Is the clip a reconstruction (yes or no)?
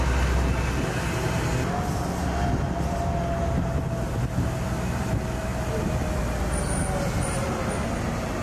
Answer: no